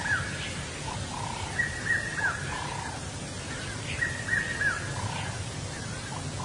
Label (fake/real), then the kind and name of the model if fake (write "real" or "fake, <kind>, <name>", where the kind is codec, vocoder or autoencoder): real